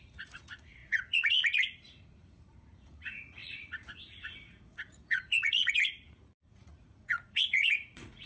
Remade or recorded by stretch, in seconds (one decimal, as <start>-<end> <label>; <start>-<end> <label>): 0.0-8.3 remade